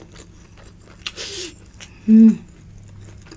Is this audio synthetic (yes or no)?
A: no